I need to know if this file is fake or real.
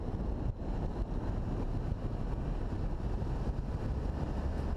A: real